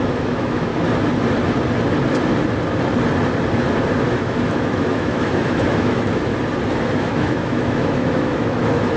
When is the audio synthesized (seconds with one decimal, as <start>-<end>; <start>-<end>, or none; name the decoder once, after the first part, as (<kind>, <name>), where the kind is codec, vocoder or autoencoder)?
0.0-0.7 (autoencoder, DAC-VAE); 4.0-6.3; 6.8-9.0